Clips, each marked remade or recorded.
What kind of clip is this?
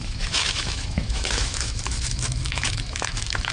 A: remade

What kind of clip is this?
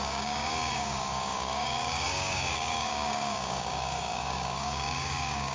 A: remade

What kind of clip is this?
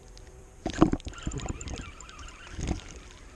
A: remade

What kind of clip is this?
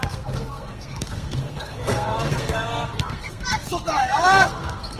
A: remade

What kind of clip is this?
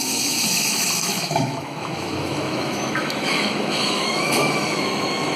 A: remade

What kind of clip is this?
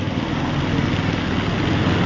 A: recorded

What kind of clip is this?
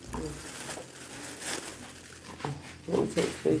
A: recorded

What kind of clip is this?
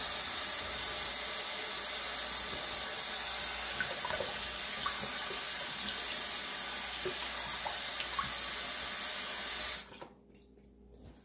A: recorded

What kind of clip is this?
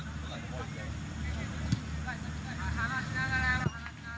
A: recorded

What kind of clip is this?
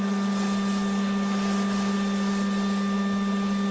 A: recorded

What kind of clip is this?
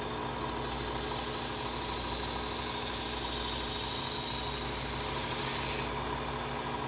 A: recorded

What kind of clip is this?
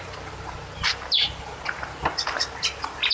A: recorded